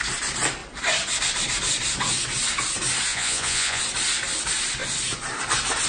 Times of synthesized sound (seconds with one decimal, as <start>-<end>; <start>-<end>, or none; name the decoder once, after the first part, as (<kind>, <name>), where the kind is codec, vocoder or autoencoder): 3.1-3.8 (vocoder, Vocos)